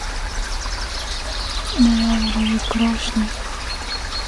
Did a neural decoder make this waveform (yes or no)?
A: no